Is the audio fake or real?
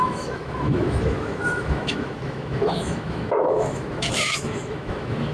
fake